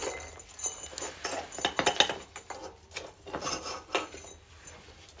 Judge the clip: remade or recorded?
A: recorded